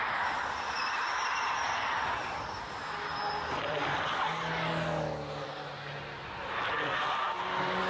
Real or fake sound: real